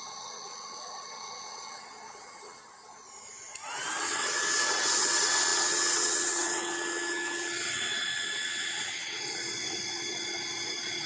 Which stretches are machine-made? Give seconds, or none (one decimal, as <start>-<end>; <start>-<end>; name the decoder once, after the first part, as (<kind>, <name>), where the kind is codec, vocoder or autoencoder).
0.0-2.6 (vocoder, WaveNeXt); 4.0-11.1